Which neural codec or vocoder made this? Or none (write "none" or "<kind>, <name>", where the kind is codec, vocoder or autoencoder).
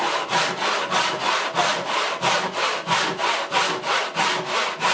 none